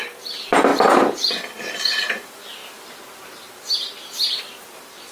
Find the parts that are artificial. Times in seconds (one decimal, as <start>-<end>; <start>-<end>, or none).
none